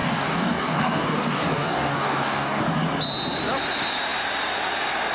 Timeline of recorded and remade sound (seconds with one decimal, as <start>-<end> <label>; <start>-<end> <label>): 0.0-2.6 remade; 2.6-5.1 recorded

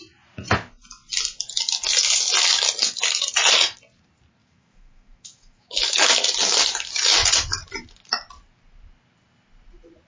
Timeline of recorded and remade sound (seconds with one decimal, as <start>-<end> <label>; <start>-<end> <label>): 0.0-4.4 recorded; 4.4-6.1 remade; 6.1-10.1 recorded

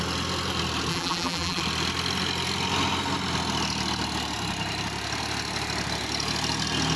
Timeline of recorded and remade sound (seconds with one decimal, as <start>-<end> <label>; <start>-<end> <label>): 0.0-0.9 recorded; 0.9-1.6 remade; 1.6-7.0 recorded

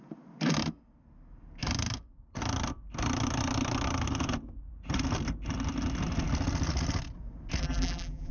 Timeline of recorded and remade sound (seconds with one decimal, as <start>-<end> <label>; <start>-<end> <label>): 0.0-7.6 recorded; 7.6-8.3 remade